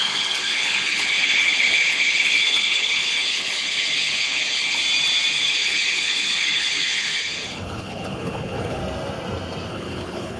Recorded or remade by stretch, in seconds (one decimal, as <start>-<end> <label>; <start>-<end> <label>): 0.0-4.8 remade; 4.8-5.3 recorded; 5.3-8.8 remade; 8.8-9.7 recorded; 9.7-10.4 remade